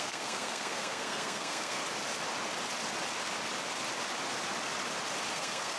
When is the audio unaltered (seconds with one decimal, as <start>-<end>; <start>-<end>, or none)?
1.8-5.3